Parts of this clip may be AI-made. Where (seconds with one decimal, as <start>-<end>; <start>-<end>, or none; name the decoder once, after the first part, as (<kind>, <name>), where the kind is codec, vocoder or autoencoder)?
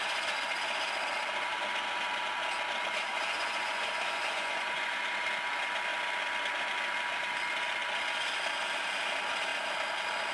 3.1-5.0 (vocoder, Vocos)